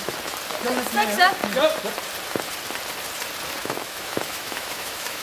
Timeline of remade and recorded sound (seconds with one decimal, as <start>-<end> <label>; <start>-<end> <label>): 0.0-3.6 recorded; 3.6-5.2 remade